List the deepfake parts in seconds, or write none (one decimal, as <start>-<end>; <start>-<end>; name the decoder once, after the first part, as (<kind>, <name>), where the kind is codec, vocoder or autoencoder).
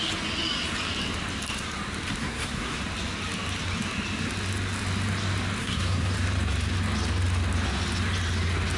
2.2-2.8 (codec, SNAC); 5.6-6.1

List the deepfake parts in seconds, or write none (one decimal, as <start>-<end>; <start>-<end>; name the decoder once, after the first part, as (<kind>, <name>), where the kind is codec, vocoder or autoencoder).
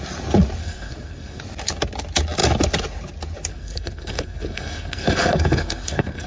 0.6-1.4 (codec, SNAC); 3.5-6.3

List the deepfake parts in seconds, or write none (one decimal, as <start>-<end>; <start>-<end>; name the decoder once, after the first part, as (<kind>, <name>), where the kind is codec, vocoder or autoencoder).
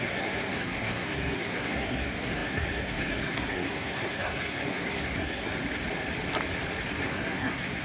0.0-5.5 (codec, SNAC); 7.0-7.8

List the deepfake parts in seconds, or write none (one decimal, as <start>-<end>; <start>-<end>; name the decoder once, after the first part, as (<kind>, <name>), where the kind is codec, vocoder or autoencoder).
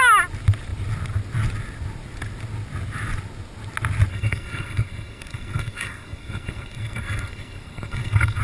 4.1-8.4 (codec, SNAC)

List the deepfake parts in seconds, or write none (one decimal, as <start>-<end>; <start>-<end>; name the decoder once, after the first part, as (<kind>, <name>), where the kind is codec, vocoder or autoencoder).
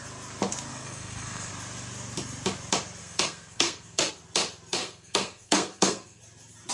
0.7-1.5 (codec, SNAC); 3.0-4.1; 4.8-6.2